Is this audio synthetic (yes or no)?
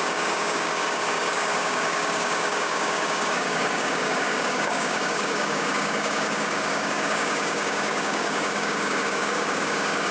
yes